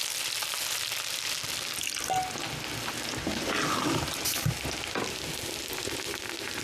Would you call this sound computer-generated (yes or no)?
no